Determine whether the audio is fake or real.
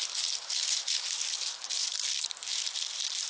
real